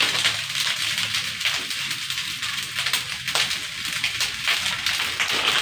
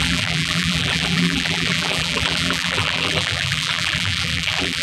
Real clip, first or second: first